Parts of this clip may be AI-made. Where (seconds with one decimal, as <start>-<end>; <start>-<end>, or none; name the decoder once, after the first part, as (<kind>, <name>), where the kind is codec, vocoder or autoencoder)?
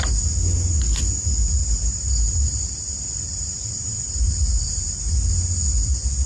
1.6-5.1 (vocoder, BigVGAN v2)